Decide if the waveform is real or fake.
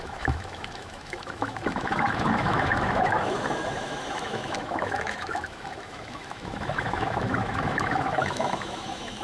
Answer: fake